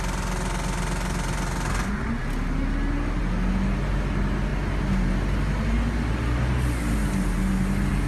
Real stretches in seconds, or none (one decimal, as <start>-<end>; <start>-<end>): 0.0-8.1